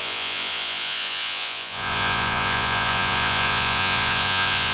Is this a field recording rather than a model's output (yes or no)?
no